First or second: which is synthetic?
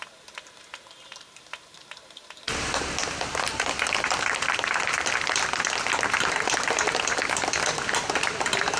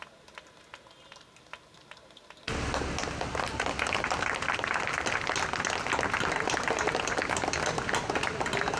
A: first